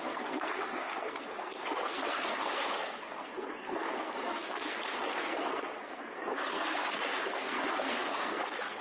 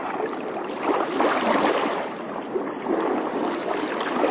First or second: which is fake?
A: first